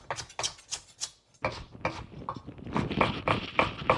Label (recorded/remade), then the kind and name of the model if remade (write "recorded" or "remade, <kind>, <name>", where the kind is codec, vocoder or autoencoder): recorded